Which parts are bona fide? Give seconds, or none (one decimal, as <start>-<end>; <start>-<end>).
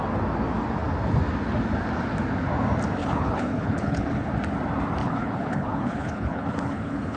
0.0-3.0; 4.3-5.0